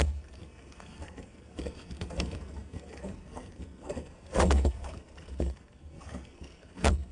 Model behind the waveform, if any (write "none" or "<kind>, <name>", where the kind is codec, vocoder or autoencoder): codec, SNAC